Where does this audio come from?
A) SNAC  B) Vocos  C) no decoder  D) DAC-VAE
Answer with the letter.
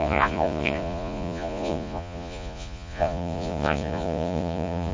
B